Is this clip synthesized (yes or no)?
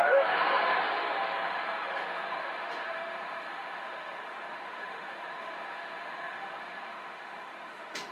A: yes